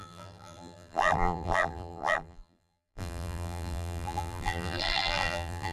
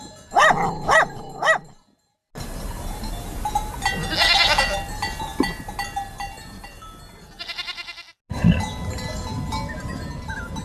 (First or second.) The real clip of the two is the second